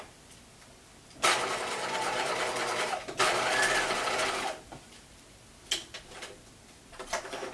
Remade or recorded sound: remade